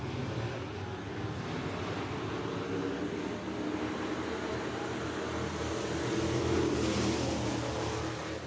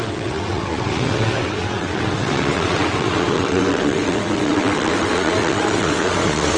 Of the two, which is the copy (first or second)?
second